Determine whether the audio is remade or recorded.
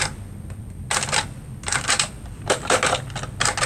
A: recorded